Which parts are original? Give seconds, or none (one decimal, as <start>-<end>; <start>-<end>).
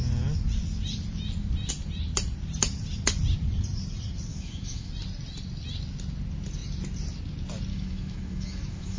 0.0-4.3; 4.9-7.7